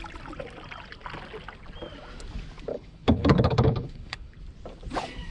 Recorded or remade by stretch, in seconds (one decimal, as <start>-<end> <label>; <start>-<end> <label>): 0.0-2.7 recorded; 2.7-4.4 remade; 4.4-5.3 recorded